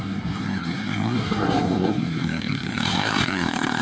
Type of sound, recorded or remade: remade